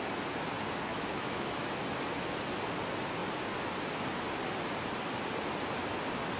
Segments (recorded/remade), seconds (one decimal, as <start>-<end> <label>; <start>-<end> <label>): 0.0-0.9 recorded; 0.9-1.8 remade; 1.8-6.4 recorded